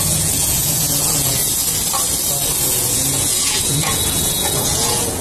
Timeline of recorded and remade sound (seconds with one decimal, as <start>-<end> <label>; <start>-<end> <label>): 0.0-1.4 remade; 1.4-2.6 recorded; 2.6-5.2 remade